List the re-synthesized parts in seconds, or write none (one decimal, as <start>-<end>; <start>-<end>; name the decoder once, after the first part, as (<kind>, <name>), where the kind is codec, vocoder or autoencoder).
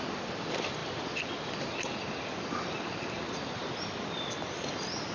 none